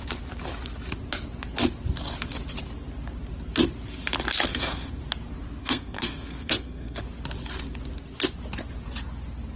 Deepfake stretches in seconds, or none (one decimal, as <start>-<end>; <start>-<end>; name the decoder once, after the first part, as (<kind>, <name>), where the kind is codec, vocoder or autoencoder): 4.5-5.0 (codec, SNAC); 5.6-7.0